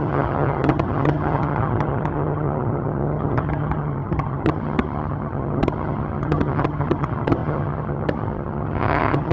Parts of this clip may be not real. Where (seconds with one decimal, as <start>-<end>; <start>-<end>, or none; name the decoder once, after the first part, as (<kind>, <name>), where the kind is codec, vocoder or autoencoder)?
0.0-9.3 (vocoder, HiFi-GAN)